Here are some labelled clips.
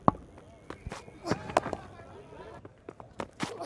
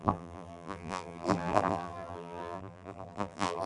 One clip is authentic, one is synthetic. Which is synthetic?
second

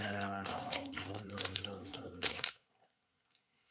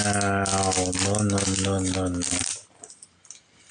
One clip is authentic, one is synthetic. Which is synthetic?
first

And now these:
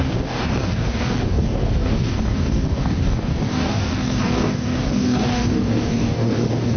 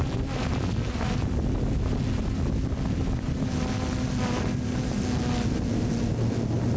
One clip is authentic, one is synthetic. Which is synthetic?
first